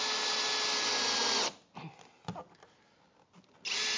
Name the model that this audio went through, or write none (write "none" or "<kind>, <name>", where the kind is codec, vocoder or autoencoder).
none